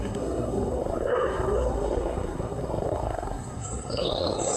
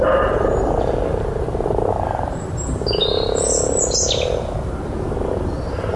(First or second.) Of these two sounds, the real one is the second